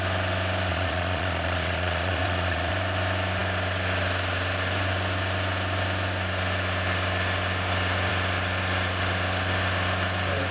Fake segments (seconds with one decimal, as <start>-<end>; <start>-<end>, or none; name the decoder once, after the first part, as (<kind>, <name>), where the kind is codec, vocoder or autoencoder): 0.7-2.7 (vocoder, Vocos)